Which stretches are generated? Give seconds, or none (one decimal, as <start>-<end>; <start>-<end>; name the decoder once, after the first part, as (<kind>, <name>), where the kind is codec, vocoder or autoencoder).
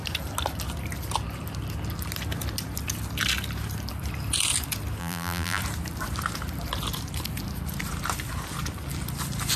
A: 5.0-5.6 (vocoder, BigVGAN v2)